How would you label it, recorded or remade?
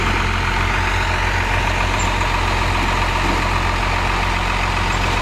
recorded